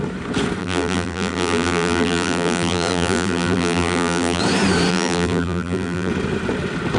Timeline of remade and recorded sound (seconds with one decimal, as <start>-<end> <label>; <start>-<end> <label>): 0.0-0.6 recorded; 0.6-4.4 remade; 4.4-4.9 recorded; 4.9-6.1 remade; 6.1-7.0 recorded